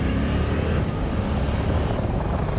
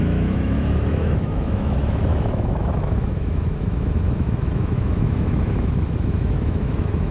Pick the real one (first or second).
first